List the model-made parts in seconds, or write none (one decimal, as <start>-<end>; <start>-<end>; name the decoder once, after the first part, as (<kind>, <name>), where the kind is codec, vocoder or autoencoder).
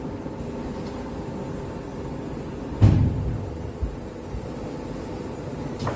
none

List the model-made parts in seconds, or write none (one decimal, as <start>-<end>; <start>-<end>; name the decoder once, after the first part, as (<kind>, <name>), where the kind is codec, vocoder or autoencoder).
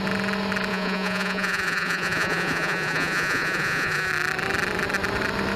0.7-4.1 (vocoder, Vocos)